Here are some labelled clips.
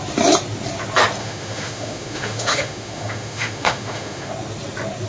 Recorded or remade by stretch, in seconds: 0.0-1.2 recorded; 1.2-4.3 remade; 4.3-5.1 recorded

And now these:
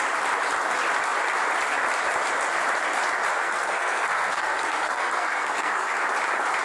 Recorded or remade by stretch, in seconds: 0.0-3.3 recorded; 3.3-6.0 remade; 6.0-6.6 recorded

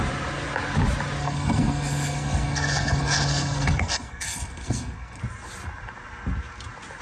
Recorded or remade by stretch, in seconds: 0.0-1.2 recorded; 1.2-5.2 remade; 5.2-7.0 recorded